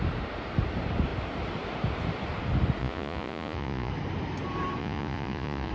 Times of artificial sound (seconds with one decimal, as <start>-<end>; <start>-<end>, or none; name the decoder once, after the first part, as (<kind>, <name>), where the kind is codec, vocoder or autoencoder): 2.8-3.9 (vocoder, Vocos); 4.8-5.7